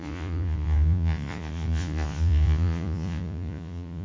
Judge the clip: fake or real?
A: fake